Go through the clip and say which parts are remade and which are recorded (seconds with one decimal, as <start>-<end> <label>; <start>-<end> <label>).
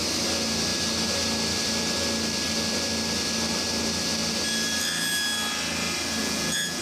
0.0-6.2 recorded; 6.2-6.8 remade